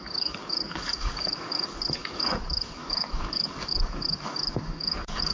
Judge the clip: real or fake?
fake